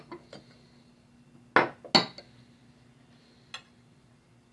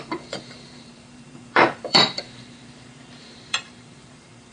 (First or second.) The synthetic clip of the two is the second